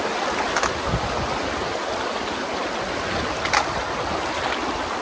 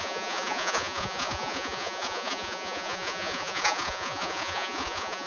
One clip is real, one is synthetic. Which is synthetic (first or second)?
second